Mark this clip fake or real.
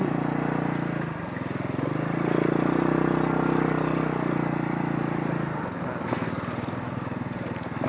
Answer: real